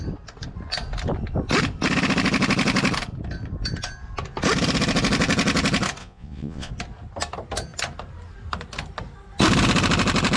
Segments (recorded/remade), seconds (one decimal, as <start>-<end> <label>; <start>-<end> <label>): 0.0-6.0 recorded; 6.0-6.7 remade; 6.7-10.4 recorded